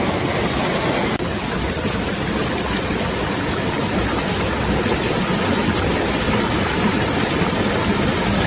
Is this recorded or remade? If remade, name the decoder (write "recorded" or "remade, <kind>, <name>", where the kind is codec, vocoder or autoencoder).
recorded